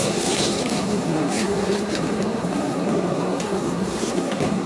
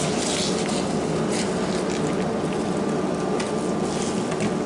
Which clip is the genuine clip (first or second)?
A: second